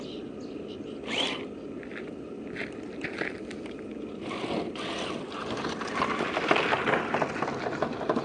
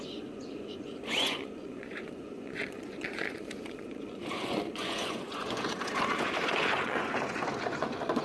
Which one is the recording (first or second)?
first